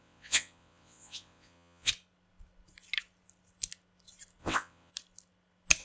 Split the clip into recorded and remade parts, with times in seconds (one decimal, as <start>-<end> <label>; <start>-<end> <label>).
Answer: 0.0-1.9 remade; 1.9-4.4 recorded; 4.4-4.9 remade; 4.9-5.8 recorded